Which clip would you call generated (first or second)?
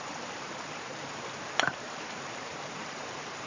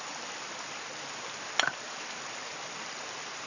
first